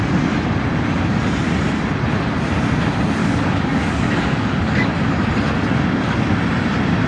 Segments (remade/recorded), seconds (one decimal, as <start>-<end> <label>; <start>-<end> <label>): 0.0-3.2 recorded; 3.2-4.9 remade; 4.9-7.1 recorded